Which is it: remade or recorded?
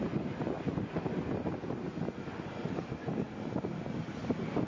recorded